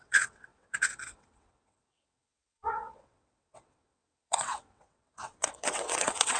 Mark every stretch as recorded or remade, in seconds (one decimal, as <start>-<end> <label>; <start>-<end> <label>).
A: 0.0-6.4 remade